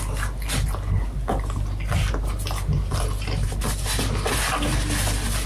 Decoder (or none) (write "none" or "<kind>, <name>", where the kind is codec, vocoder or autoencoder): none